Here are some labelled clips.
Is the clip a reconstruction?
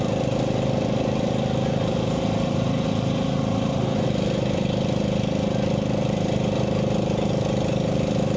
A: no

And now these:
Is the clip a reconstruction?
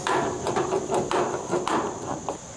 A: no